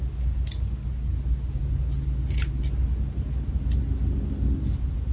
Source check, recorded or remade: recorded